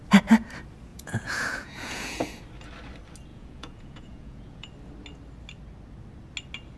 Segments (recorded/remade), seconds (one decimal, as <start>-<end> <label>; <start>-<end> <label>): 0.0-0.9 recorded; 0.9-2.4 remade; 2.4-3.3 recorded; 3.3-4.7 remade; 4.7-6.8 recorded